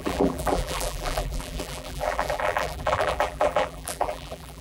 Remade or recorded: remade